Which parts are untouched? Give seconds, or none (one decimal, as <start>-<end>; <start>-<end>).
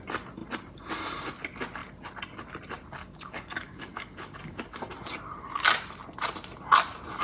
0.0-3.0; 4.9-7.2